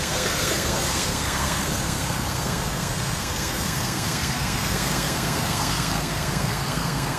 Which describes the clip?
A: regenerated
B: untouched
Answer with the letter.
A